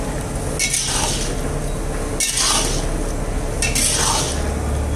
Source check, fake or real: real